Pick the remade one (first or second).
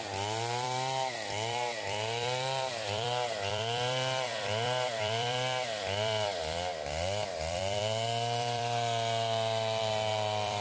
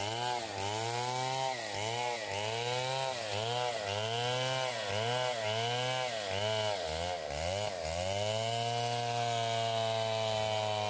first